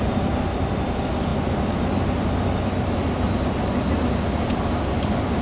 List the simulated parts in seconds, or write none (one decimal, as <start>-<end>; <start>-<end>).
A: none